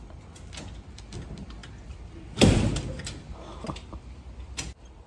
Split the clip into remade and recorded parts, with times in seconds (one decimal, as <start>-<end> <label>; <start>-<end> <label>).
0.0-5.1 recorded